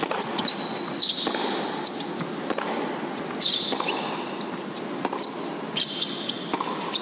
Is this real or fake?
real